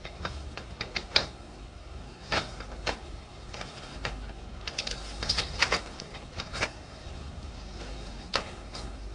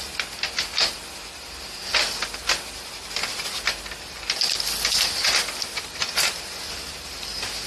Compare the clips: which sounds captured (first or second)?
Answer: second